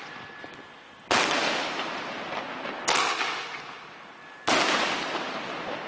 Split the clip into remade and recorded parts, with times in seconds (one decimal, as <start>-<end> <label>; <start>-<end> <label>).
0.0-5.9 recorded